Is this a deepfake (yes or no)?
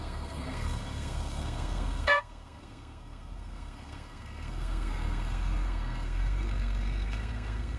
yes